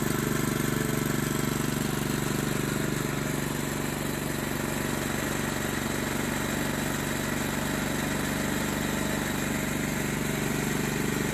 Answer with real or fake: real